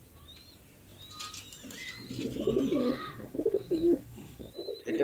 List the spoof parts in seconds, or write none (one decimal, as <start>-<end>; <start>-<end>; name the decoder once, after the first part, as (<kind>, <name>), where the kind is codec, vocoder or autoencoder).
2.8-4.5 (autoencoder, DAC-VAE)